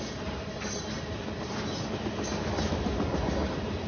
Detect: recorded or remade recorded